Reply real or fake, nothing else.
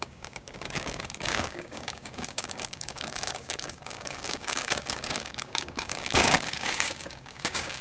fake